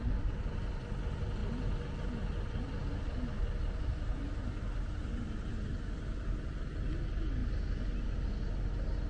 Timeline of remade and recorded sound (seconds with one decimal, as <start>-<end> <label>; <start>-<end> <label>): 0.0-9.1 recorded